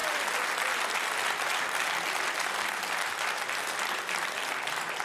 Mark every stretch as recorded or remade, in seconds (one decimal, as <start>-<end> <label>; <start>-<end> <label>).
0.0-5.0 recorded